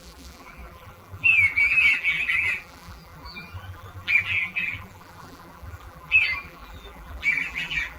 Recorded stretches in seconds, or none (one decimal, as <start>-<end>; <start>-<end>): none